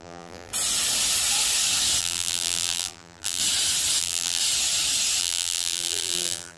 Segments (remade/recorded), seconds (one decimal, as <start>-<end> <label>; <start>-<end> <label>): 0.0-0.5 remade; 0.5-2.0 recorded; 2.0-3.4 remade; 3.4-4.0 recorded; 4.0-4.4 remade; 4.4-5.2 recorded; 5.2-6.6 remade